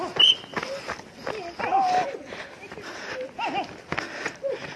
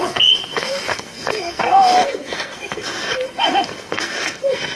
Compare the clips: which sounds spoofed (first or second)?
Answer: second